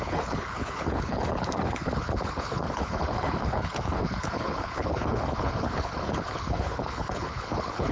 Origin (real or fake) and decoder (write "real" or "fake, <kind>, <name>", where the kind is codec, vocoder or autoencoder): fake, codec, HILCodec